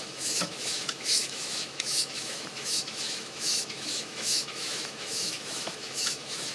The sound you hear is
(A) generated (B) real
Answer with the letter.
A